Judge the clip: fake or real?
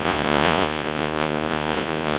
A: fake